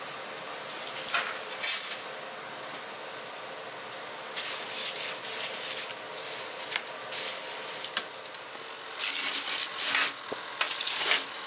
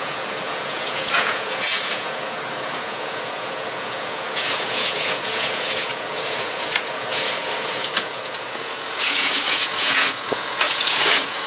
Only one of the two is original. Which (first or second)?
first